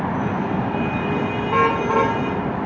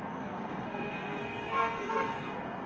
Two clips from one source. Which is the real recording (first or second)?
first